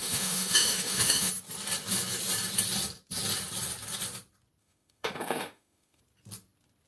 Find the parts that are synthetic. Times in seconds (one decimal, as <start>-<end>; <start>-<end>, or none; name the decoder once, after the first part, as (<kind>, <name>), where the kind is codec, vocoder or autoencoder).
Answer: 0.0-1.3 (autoencoder, DAC-VAE); 4.6-6.0